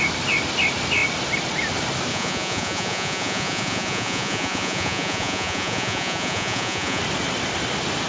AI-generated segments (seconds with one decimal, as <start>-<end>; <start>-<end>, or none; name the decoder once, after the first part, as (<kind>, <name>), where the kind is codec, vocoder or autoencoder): 2.1-7.0 (vocoder, Vocos)